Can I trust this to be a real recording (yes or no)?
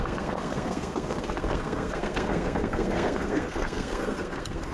no